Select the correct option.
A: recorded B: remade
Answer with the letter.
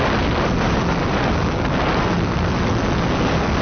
A